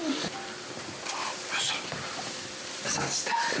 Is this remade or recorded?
remade